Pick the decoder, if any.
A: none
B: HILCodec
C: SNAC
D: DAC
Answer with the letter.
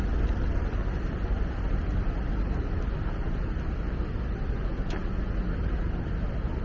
A